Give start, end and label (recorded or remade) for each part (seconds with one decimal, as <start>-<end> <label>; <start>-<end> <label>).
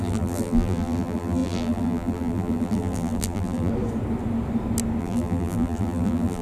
0.0-3.7 remade; 3.7-5.0 recorded; 5.0-6.4 remade